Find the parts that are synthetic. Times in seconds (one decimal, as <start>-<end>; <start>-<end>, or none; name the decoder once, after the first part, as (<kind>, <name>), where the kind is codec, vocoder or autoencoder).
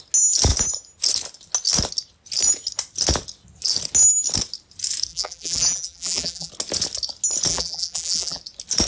5.1-6.5 (vocoder, BigVGAN v2); 7.5-8.4